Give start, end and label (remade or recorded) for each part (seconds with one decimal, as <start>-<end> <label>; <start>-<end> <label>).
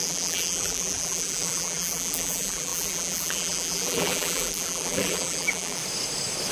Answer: 0.0-5.8 remade; 5.8-6.5 recorded